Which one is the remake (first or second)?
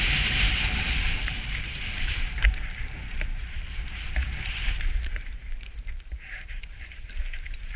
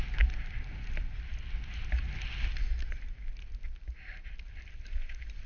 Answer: first